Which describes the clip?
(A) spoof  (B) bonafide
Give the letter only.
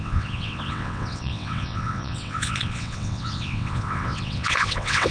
A